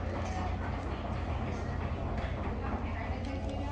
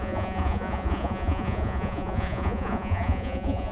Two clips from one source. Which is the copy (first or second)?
second